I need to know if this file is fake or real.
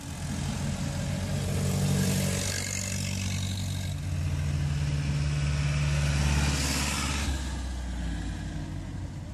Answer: real